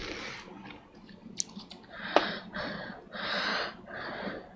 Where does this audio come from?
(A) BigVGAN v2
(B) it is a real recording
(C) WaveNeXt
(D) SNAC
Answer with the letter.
B